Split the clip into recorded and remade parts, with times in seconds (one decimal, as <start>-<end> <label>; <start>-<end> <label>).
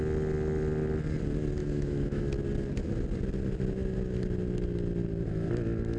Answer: 0.0-1.6 recorded; 1.6-2.2 remade; 2.2-6.0 recorded